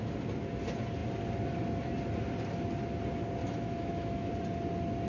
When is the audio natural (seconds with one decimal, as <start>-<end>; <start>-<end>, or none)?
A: 0.0-3.4; 4.3-5.1